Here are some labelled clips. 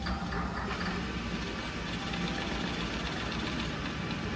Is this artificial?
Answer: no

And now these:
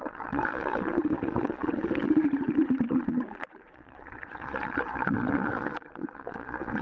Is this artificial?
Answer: yes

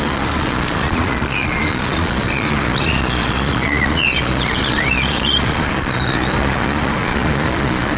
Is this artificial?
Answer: yes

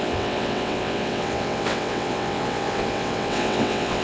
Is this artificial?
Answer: yes